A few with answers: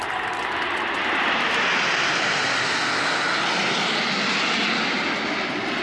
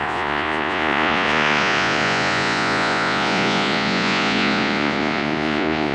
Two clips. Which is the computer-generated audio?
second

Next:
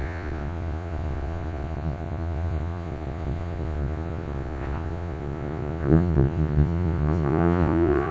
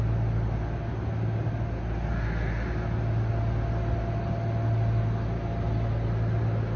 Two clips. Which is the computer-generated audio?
first